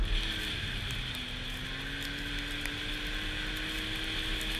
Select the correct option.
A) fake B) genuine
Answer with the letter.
B